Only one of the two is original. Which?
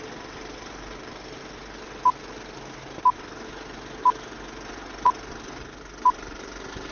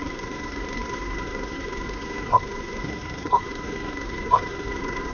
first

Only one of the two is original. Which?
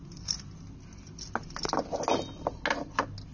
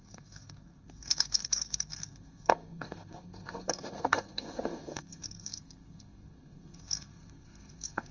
first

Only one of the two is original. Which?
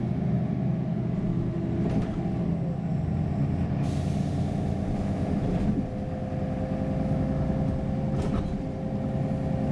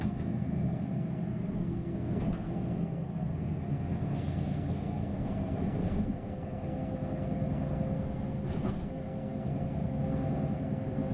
first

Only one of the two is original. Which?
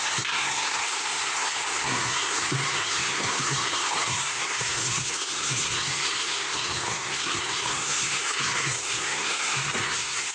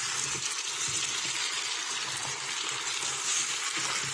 second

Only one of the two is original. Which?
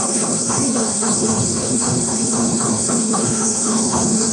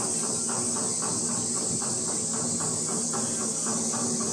second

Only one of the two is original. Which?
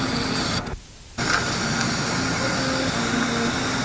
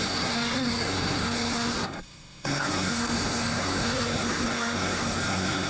first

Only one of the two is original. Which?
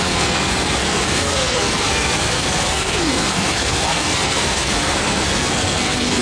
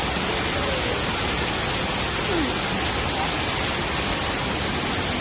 second